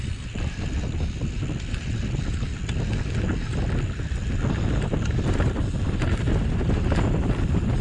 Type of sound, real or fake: real